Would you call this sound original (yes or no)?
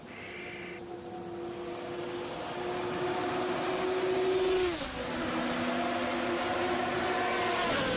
yes